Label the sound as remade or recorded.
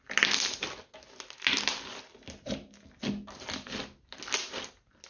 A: recorded